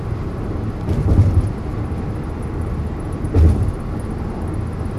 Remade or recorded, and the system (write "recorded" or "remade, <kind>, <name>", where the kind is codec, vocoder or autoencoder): recorded